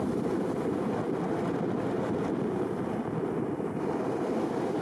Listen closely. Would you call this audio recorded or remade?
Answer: recorded